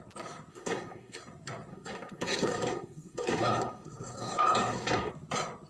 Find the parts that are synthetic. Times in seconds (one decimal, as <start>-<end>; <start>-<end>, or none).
0.5-1.2; 1.7-5.1